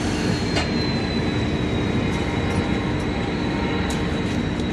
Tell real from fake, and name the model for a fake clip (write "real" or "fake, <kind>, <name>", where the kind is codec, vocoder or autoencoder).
real